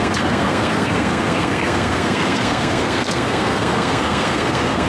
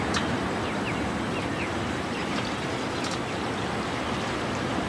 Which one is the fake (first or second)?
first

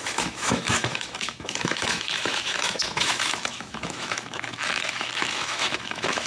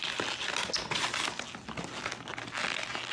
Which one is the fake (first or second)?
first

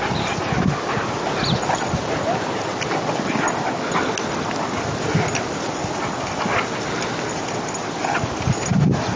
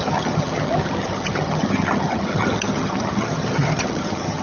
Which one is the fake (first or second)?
second